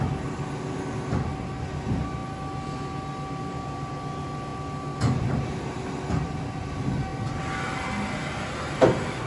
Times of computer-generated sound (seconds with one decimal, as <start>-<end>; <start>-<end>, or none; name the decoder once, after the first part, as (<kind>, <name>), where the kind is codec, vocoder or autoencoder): none

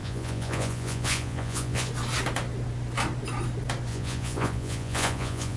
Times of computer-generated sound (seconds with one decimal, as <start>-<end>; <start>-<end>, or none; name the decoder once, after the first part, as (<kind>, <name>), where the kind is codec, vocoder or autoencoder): 0.0-1.9 (vocoder, Vocos); 3.9-5.6

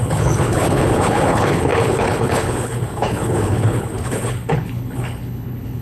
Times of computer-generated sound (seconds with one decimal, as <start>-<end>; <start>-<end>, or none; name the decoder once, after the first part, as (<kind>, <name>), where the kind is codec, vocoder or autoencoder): 0.0-5.8 (codec, HILCodec)

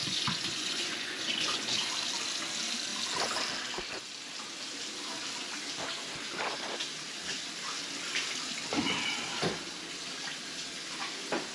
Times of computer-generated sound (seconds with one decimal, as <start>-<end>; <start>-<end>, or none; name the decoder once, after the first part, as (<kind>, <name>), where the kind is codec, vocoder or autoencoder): 0.0-1.9 (vocoder, Vocos)

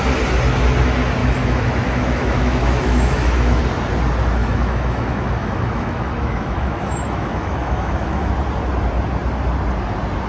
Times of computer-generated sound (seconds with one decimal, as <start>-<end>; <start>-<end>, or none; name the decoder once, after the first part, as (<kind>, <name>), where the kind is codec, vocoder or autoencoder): 1.2-3.6 (autoencoder, DAC-VAE); 4.4-8.3

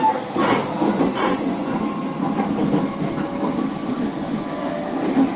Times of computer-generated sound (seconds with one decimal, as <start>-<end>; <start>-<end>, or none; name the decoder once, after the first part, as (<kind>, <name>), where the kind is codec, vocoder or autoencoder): 0.9-1.9 (vocoder, Vocos); 3.8-4.7

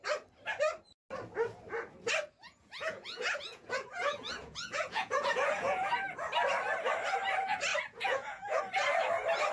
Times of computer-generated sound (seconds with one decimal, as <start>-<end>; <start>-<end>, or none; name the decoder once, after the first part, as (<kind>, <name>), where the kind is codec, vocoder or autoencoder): 2.4-5.9 (vocoder, Vocos); 7.7-8.6